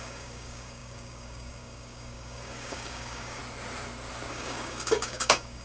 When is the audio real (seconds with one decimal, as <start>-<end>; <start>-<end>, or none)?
3.4-4.3